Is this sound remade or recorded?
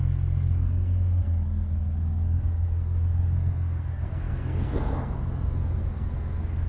remade